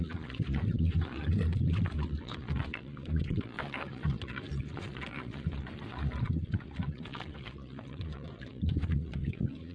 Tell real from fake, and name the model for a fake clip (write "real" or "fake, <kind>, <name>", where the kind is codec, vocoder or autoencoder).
fake, vocoder, Vocos